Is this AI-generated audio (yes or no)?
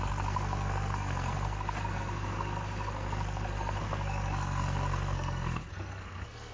yes